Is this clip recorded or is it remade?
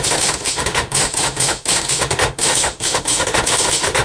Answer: remade